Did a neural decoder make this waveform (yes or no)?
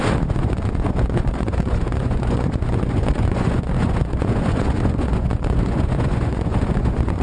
yes